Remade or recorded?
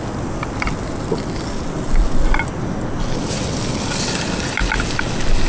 recorded